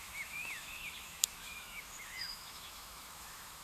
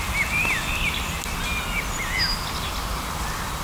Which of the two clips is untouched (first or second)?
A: second